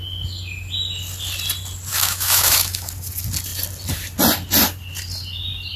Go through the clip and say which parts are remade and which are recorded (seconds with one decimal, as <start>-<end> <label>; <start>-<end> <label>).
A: 0.0-1.9 recorded; 1.9-2.9 remade; 2.9-5.8 recorded

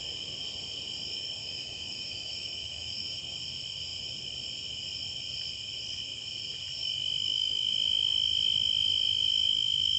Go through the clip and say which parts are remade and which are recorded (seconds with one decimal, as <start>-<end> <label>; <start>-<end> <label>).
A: 0.0-1.4 recorded; 1.4-3.2 remade; 3.2-7.2 recorded; 7.2-7.7 remade; 7.7-9.5 recorded; 9.5-10.0 remade

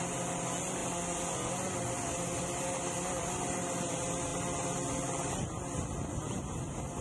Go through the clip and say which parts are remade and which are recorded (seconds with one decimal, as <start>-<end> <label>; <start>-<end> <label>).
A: 0.0-7.0 recorded

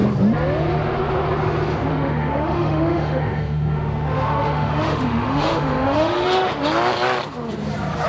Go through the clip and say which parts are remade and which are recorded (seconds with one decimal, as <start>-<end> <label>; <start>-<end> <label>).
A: 0.0-1.9 recorded; 1.9-6.6 remade; 6.6-8.1 recorded

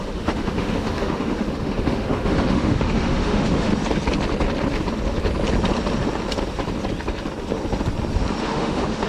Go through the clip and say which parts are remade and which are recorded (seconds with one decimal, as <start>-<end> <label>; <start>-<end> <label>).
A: 0.0-3.7 remade; 3.7-8.4 recorded; 8.4-9.1 remade